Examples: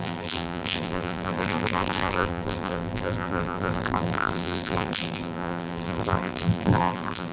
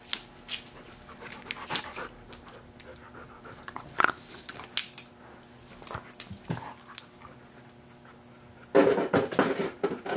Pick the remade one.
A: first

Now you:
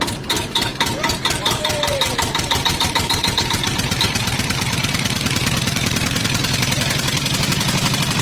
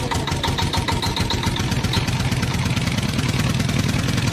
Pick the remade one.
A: first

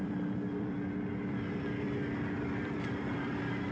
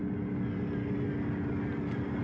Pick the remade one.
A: first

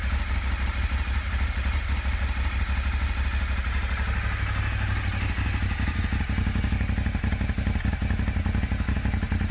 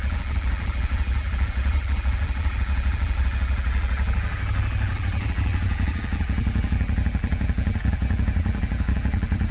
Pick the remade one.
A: second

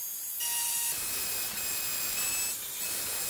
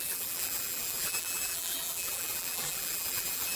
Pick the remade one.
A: second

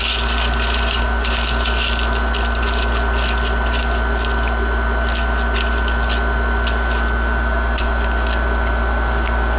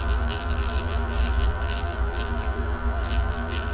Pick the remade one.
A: second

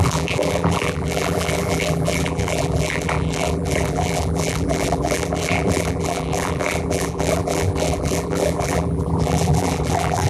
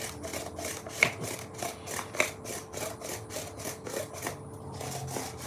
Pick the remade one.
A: first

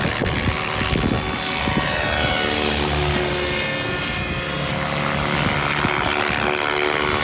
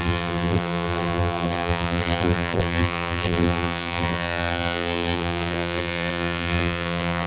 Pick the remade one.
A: second